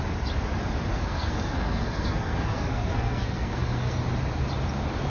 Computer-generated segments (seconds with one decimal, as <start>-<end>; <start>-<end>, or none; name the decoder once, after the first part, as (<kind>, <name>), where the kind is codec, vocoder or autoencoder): 0.9-4.0 (codec, SNAC)